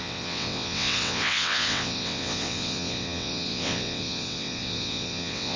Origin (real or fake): fake